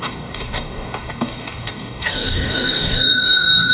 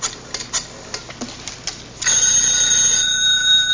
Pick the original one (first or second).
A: second